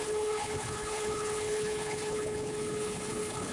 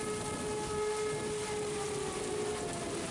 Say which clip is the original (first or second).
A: second